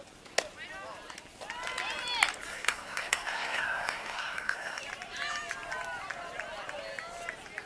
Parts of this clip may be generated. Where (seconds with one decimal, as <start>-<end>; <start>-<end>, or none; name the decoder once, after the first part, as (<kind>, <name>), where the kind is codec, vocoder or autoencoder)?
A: 2.5-4.8 (codec, SNAC)